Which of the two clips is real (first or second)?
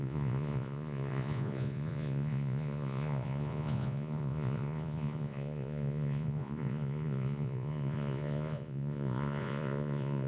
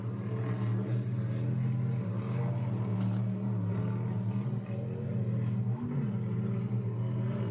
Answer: second